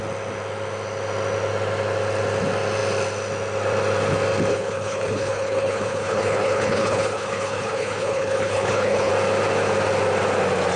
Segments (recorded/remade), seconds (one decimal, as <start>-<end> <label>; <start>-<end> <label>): 0.0-4.5 recorded; 4.5-9.1 remade; 9.1-10.8 recorded